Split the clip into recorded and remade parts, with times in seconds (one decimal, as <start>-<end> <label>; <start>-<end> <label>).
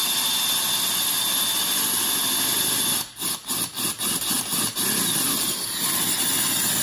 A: 0.0-6.8 recorded